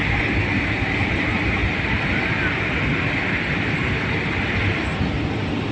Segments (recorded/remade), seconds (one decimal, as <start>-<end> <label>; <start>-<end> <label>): 0.0-5.7 recorded